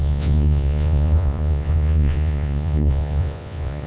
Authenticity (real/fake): fake